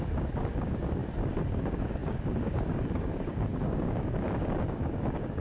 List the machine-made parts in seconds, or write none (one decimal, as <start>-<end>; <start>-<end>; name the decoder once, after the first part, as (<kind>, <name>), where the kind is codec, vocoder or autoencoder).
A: 0.0-1.0 (codec, DAC); 1.6-5.4